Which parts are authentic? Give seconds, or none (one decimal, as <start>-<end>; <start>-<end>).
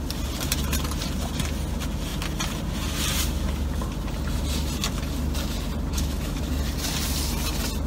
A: 0.0-5.9; 6.4-7.9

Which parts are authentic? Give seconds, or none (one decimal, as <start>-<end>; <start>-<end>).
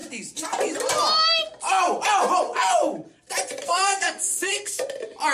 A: 0.0-3.6; 4.8-5.3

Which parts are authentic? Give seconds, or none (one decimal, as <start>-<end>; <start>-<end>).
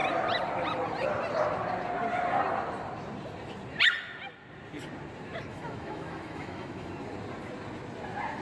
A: 0.0-5.5; 6.9-8.4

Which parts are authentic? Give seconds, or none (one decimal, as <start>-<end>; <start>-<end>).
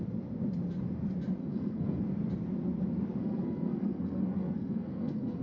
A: 0.0-1.4; 2.0-3.2